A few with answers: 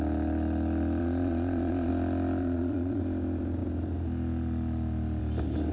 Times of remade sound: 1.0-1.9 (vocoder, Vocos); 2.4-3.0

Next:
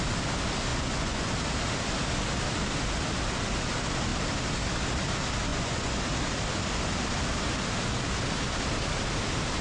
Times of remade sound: 0.7-1.3 (vocoder, Vocos); 5.5-6.0

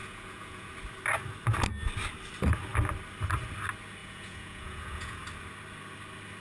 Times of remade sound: 0.0-0.7 (vocoder, Vocos); 4.0-5.2

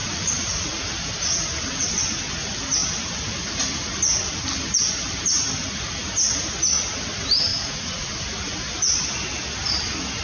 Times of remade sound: 0.0-0.9 (vocoder, Vocos); 7.5-8.2

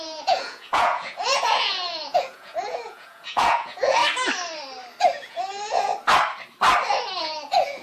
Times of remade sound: 0.0-4.0 (vocoder, Vocos); 5.2-5.9; 7.2-7.8

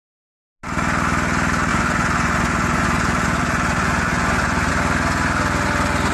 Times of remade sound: 1.7-4.7 (vocoder, Vocos)